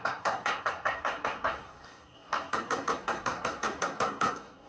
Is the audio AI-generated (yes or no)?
yes